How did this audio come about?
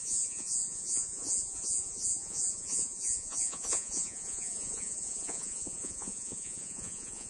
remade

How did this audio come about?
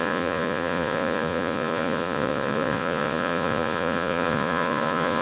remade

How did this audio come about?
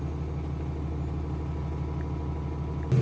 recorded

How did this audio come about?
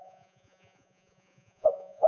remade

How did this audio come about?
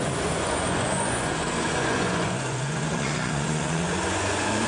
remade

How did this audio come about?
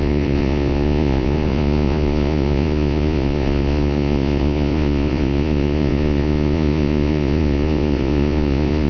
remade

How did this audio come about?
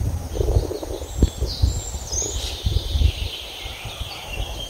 recorded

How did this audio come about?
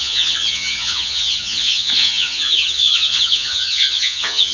remade